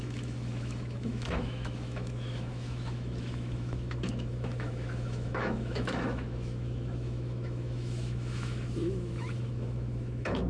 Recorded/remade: remade